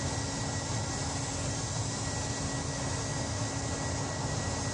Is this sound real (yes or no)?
yes